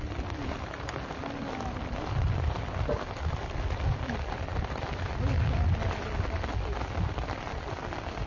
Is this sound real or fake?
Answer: real